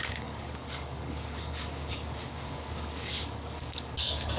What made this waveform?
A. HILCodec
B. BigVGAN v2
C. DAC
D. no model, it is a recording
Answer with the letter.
C